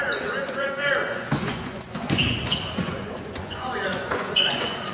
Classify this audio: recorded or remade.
remade